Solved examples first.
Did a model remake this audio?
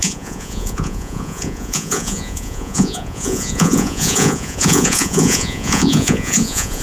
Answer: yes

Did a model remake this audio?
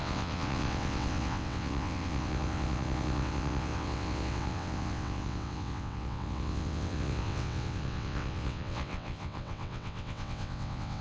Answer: yes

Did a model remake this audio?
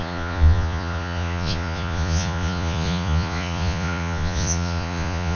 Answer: yes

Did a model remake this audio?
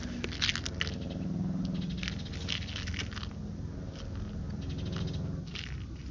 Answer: no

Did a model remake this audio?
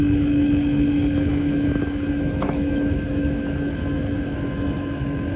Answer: yes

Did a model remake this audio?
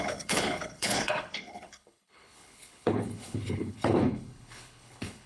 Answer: yes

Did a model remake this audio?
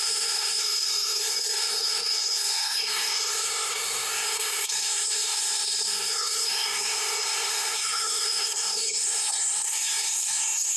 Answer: yes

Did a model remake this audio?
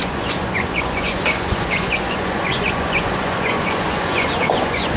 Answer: yes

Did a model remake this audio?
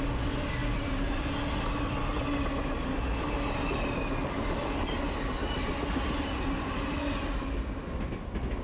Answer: no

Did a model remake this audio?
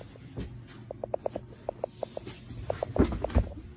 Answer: no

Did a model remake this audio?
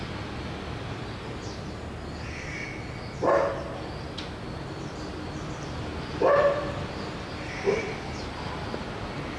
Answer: no